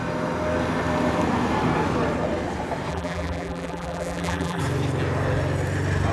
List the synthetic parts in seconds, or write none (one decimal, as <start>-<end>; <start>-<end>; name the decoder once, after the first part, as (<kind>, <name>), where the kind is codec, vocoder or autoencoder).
2.9-4.6 (vocoder, BigVGAN v2)